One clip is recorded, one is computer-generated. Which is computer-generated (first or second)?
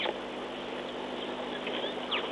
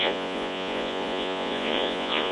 second